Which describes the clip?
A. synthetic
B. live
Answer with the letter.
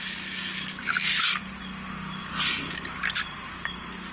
B